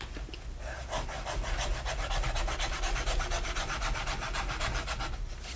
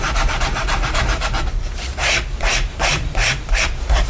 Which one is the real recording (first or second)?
first